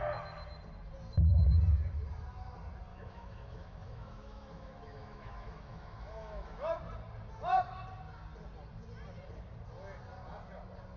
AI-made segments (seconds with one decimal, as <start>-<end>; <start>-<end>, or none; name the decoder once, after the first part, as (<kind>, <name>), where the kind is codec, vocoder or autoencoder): 2.9-6.8 (autoencoder, DAC-VAE)